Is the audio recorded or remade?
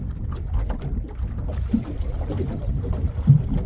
recorded